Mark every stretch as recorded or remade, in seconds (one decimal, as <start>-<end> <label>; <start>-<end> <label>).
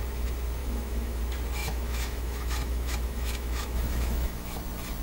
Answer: 0.0-0.6 recorded; 0.6-1.2 remade; 1.2-1.6 recorded; 1.6-4.6 remade; 4.6-5.0 recorded